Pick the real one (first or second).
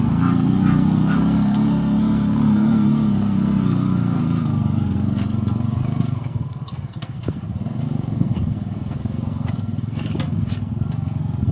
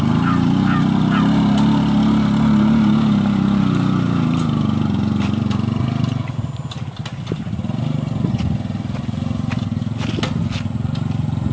second